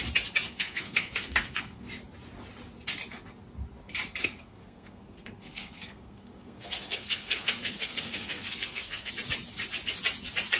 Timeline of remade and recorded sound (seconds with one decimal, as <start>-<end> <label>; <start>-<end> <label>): 0.0-0.5 recorded; 0.5-1.9 remade; 1.9-4.2 recorded; 4.2-9.1 remade; 9.1-10.6 recorded